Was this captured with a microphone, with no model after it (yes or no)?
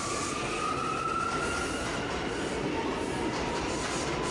yes